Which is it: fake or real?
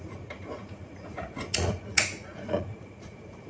fake